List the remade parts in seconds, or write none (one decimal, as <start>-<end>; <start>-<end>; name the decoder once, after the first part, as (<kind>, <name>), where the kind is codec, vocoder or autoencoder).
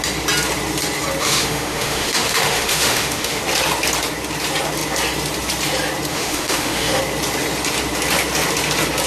1.2-3.4 (autoencoder, DAC-VAE); 6.1-7.0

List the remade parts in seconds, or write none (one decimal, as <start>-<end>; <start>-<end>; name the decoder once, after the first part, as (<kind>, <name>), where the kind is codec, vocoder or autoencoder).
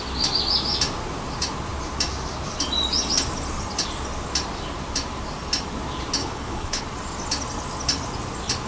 6.2-6.8 (codec, HILCodec)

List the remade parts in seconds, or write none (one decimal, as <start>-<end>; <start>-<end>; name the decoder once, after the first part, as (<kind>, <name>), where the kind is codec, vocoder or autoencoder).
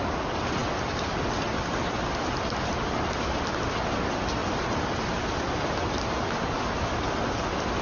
4.4-6.3 (vocoder, BigVGAN v2)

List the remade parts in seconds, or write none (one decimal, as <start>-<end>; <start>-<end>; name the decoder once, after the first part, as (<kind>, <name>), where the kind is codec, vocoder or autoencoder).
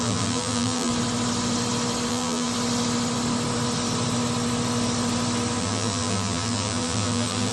0.0-0.9 (vocoder, BigVGAN v2); 2.1-2.5; 5.6-7.5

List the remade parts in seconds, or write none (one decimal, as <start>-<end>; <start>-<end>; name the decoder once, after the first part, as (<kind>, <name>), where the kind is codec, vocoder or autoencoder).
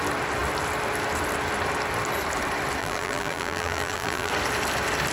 2.8-4.3 (vocoder, BigVGAN v2)